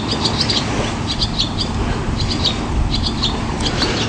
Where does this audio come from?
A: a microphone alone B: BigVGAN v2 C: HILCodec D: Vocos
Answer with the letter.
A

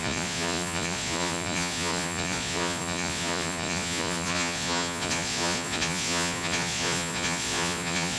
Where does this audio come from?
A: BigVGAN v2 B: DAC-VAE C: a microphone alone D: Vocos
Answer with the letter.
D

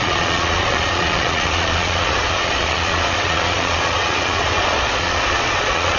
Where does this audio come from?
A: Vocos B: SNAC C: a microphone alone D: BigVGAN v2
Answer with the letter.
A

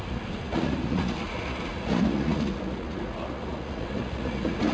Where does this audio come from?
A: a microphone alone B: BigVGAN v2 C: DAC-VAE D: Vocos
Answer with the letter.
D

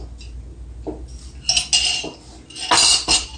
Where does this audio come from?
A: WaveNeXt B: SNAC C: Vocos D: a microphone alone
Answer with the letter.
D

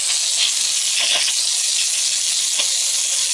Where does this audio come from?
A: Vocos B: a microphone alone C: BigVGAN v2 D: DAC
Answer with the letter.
B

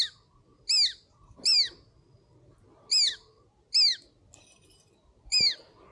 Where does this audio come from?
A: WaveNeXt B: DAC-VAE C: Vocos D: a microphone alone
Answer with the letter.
D